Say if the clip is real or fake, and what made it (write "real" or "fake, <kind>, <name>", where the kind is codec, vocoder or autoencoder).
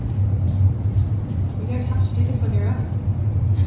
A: fake, vocoder, BigVGAN v2